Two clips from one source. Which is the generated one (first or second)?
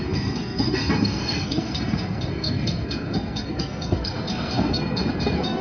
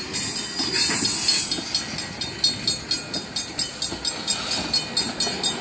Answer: first